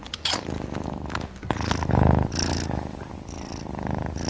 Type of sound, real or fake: real